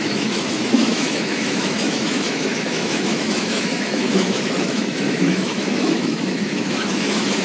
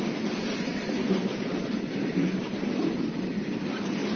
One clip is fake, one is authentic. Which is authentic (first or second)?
second